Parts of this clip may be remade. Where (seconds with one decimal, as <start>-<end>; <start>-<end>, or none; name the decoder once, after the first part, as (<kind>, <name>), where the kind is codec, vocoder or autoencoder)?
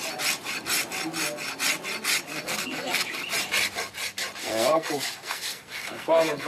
2.3-3.1 (codec, SNAC); 4.4-6.5